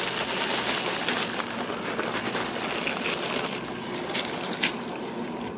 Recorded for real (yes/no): yes